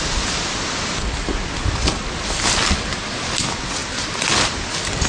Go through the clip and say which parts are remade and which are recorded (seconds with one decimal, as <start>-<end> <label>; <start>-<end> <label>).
0.0-5.1 recorded